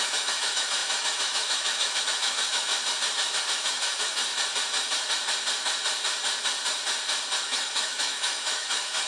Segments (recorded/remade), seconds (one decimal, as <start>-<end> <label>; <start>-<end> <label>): 0.0-2.7 remade; 2.7-3.4 recorded; 3.4-4.3 remade; 4.3-7.4 recorded; 7.4-9.1 remade